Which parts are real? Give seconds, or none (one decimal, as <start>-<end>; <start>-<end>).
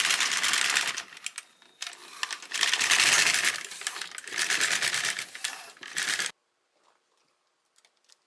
0.0-8.3